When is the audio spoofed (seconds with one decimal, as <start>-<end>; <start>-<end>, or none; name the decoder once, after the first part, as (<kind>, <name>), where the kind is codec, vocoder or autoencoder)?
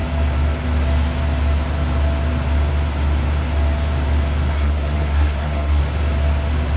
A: 4.5-5.8 (codec, SNAC)